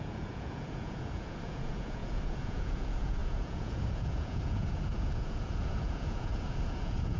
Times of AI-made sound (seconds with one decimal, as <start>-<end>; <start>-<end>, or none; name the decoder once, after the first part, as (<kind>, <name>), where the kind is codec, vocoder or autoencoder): 0.0-7.2 (vocoder, Vocos)